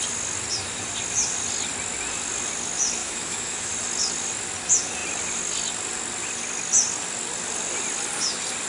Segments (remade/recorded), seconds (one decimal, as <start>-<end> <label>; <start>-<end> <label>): 0.0-3.0 recorded; 3.0-3.7 remade; 3.7-8.7 recorded